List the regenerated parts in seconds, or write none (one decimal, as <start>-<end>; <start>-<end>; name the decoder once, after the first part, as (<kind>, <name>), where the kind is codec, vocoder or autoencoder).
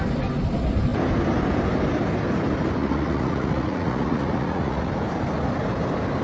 2.8-4.9 (vocoder, Vocos)